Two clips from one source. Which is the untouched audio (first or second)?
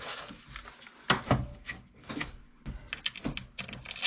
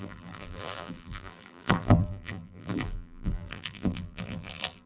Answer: first